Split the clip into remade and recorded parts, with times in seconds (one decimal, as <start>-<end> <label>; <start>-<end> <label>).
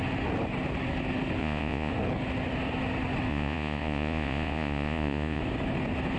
0.0-1.4 recorded; 1.4-1.9 remade; 1.9-3.3 recorded; 3.3-5.4 remade; 5.4-6.2 recorded